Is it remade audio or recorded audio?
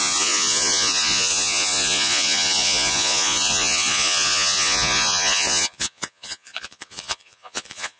remade